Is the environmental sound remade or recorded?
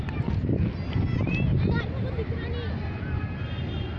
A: recorded